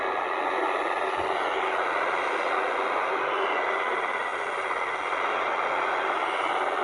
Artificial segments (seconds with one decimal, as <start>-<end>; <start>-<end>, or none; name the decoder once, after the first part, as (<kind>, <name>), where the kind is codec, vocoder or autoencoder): none